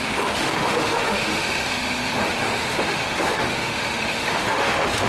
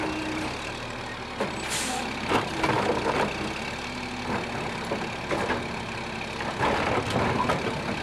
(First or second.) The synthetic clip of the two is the first